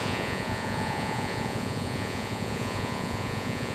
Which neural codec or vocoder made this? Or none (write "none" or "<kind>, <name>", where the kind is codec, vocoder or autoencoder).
vocoder, Vocos